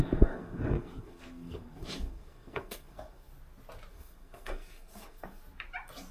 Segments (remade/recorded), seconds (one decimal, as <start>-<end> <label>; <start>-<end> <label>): 0.0-3.3 remade; 3.3-3.9 recorded; 3.9-5.4 remade; 5.4-6.1 recorded